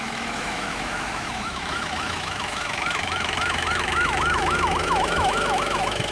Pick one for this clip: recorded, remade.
remade